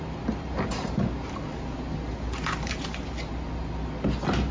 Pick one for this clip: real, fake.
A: real